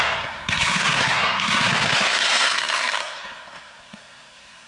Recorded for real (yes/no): no